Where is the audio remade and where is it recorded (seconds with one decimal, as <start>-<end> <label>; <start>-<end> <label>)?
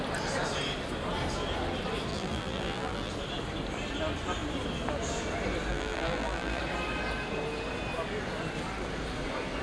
0.0-2.1 recorded; 2.1-3.1 remade; 3.1-5.7 recorded; 5.7-6.6 remade; 6.6-9.6 recorded